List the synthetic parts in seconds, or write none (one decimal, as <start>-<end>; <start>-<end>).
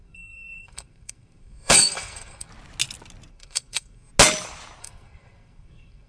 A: 0.0-2.5; 3.3-4.1; 4.8-6.1